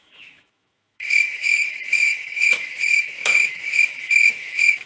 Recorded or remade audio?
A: remade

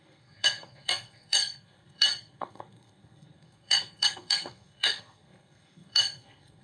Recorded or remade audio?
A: remade